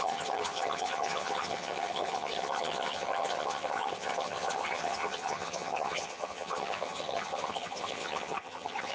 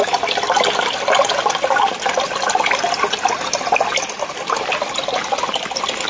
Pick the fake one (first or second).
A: first